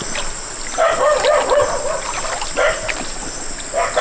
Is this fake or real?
real